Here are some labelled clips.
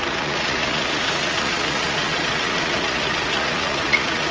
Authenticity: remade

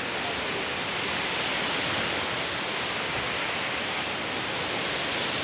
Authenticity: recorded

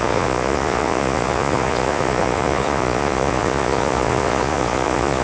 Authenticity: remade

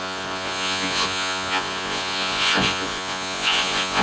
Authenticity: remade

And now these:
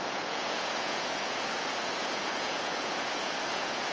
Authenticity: remade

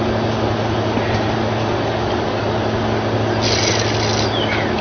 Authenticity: recorded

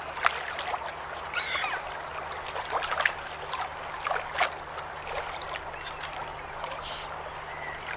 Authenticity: recorded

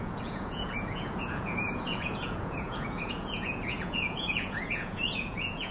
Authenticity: remade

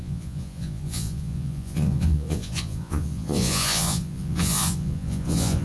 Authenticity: remade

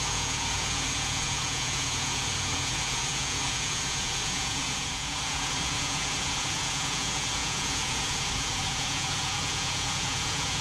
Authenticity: remade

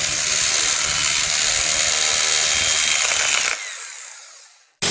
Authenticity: recorded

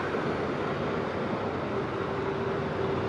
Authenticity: recorded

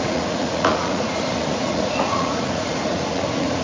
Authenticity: remade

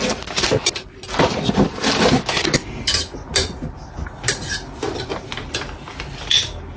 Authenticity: recorded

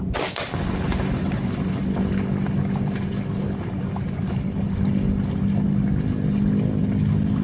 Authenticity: recorded